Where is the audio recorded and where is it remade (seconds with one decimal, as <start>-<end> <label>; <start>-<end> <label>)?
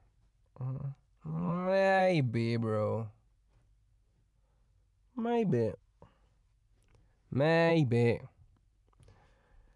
0.0-1.3 recorded; 1.3-2.0 remade; 2.0-9.8 recorded